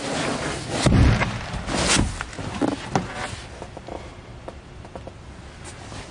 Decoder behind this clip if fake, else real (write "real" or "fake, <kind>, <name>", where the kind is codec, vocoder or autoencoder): real